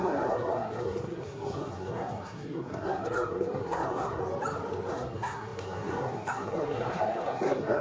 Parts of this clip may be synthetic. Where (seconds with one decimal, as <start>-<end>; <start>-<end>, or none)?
0.0-4.2; 4.9-7.8